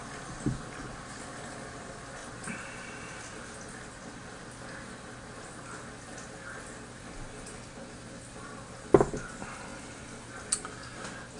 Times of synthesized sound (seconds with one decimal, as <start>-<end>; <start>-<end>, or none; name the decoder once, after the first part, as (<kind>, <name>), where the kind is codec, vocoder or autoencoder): none